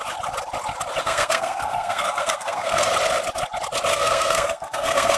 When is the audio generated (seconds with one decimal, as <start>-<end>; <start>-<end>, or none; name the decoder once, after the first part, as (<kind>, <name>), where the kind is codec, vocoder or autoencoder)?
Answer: 1.0-2.9 (codec, SNAC); 3.9-5.2